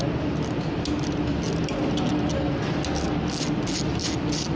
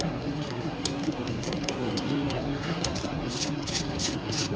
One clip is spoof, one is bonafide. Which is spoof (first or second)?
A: second